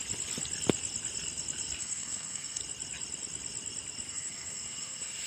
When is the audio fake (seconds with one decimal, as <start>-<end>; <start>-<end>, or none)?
1.8-2.6; 4.1-5.3